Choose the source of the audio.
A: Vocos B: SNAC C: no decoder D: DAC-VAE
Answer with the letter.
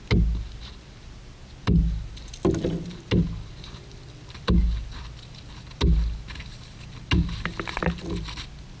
C